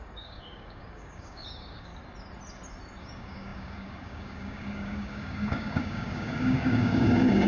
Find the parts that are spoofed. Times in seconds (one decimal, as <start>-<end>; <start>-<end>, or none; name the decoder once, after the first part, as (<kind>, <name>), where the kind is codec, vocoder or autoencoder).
0.0-1.9 (codec, DAC); 3.0-7.5